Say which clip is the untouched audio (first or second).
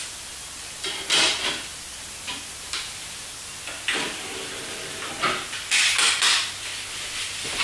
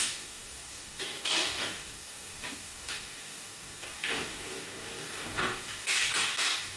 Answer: first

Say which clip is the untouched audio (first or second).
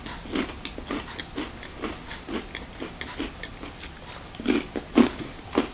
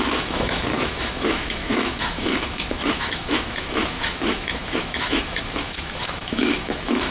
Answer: first